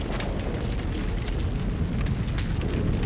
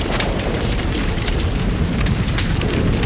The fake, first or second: second